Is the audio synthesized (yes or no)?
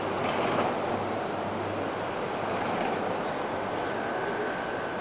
no